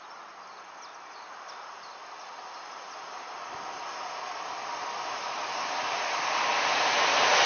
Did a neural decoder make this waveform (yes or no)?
no